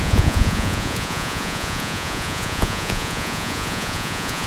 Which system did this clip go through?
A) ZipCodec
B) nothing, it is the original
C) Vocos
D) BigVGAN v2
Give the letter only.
C